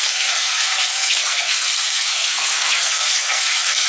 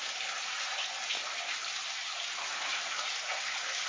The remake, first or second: first